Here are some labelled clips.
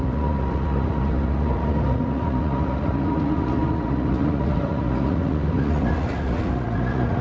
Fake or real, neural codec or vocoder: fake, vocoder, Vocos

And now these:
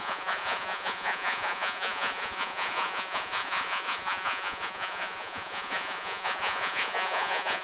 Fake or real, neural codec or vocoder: fake, vocoder, Vocos